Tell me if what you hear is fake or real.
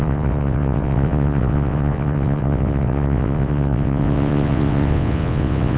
fake